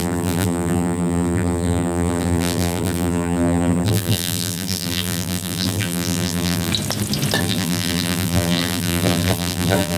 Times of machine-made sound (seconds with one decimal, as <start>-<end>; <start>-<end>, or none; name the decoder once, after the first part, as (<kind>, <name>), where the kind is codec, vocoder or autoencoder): 0.0-6.7 (vocoder, BigVGAN v2); 7.4-10.0